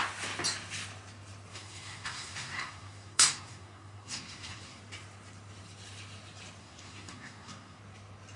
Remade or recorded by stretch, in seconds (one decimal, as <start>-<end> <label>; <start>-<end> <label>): 0.0-1.5 recorded; 1.5-4.8 remade; 4.8-6.6 recorded; 6.6-7.8 remade; 7.8-8.4 recorded